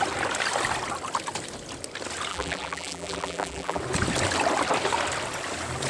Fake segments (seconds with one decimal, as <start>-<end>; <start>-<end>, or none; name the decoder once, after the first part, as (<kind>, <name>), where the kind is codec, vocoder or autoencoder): 2.3-3.8 (vocoder, BigVGAN v2)